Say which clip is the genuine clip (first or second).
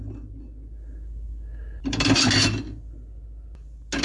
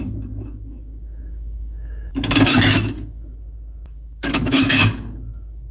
first